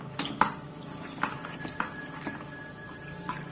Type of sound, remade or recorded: recorded